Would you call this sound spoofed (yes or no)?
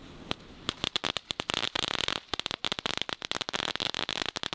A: no